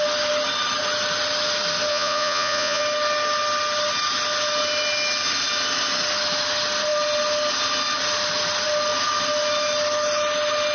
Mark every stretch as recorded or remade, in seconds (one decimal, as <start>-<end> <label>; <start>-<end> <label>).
0.0-1.9 recorded; 1.9-2.8 remade; 2.8-10.7 recorded